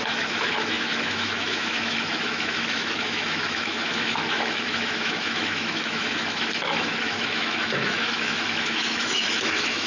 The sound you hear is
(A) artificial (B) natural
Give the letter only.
A